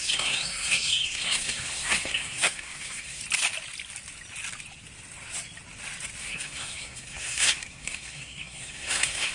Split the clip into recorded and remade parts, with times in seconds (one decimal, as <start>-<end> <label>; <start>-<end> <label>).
0.0-3.2 remade; 3.2-6.2 recorded; 6.2-9.3 remade